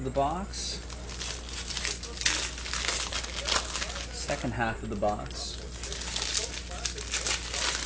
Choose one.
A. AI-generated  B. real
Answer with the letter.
B